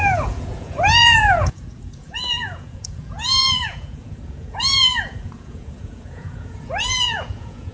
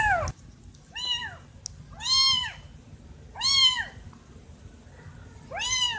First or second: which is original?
second